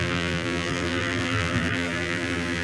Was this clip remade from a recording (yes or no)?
yes